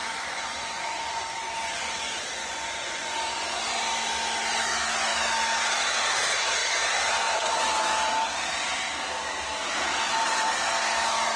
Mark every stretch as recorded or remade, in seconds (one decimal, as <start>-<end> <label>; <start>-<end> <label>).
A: 0.0-3.8 remade; 3.8-11.4 recorded